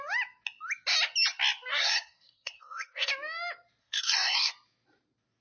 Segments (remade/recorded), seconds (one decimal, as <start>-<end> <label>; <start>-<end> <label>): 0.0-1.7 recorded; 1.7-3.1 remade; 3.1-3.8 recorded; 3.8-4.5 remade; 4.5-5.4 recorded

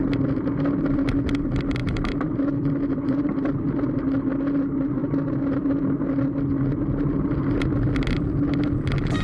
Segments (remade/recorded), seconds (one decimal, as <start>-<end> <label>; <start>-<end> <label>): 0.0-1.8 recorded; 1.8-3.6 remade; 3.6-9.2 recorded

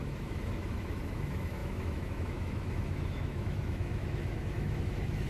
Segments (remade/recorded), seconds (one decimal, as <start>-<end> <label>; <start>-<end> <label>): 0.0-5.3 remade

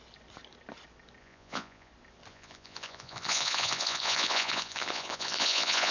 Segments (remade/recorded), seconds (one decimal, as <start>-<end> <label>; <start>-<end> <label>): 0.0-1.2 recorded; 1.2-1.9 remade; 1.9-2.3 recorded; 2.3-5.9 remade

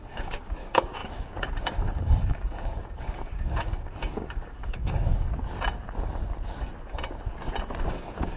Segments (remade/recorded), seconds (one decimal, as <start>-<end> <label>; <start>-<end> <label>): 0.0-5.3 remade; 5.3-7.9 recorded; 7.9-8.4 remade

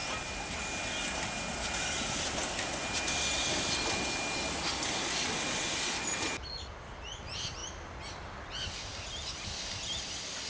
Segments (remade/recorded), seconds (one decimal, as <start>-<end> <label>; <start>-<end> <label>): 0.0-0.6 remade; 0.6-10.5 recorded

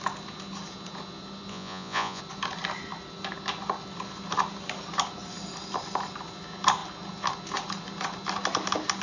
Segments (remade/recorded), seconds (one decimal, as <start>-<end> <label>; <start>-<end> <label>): 0.0-1.5 recorded; 1.5-2.2 remade; 2.2-9.0 recorded